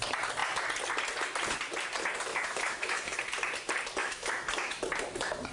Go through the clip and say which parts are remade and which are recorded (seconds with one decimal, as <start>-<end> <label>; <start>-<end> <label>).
0.0-2.3 recorded; 2.3-3.2 remade; 3.2-4.0 recorded; 4.0-4.8 remade; 4.8-5.5 recorded